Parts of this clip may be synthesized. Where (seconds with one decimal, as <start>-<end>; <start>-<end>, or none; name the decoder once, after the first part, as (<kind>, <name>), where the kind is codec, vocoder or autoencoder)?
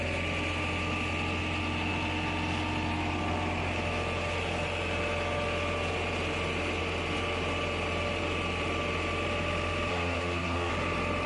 9.9-10.7 (codec, SNAC)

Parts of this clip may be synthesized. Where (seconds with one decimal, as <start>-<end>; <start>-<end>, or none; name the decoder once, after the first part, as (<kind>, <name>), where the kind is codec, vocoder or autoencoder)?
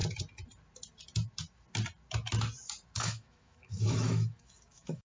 3.0-5.0 (autoencoder, DAC-VAE)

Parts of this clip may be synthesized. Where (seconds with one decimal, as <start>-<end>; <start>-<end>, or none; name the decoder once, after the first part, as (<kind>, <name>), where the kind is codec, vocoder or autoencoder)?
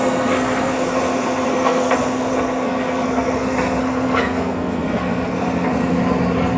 0.0-6.0 (codec, SNAC)